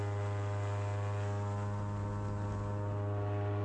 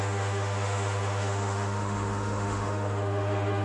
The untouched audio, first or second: first